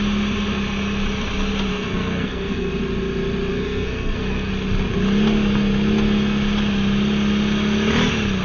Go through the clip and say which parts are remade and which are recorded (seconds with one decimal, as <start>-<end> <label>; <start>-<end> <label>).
0.0-1.7 recorded; 1.7-2.7 remade; 2.7-3.5 recorded; 3.5-4.5 remade; 4.5-8.4 recorded

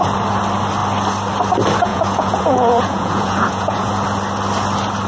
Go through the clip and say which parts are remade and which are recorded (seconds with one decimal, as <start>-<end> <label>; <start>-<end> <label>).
0.0-1.9 recorded; 1.9-3.9 remade; 3.9-5.1 recorded

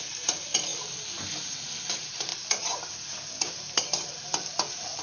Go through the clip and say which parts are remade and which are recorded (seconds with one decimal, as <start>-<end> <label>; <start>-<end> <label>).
0.0-5.0 recorded

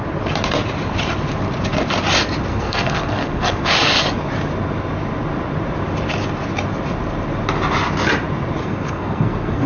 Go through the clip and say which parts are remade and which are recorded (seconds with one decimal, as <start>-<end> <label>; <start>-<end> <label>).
0.0-2.5 recorded; 2.5-3.7 remade; 3.7-8.6 recorded; 8.6-9.7 remade

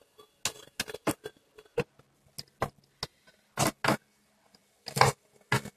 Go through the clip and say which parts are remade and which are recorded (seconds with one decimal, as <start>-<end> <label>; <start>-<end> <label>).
0.0-5.8 recorded

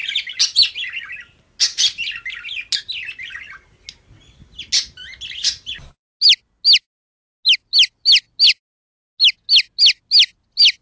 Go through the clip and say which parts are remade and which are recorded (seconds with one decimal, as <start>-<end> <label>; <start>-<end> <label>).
0.0-10.8 recorded

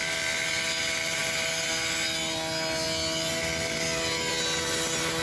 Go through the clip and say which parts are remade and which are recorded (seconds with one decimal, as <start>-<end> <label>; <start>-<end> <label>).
0.0-5.2 recorded